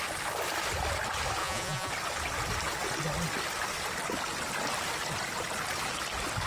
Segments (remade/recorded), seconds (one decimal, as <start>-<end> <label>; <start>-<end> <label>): 0.0-1.4 recorded; 1.4-1.9 remade; 1.9-6.5 recorded